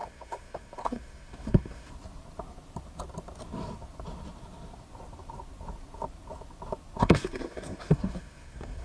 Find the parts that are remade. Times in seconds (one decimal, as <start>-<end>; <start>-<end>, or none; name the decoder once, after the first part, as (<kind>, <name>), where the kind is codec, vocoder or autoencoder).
0.0-1.9 (codec, SNAC); 7.0-8.8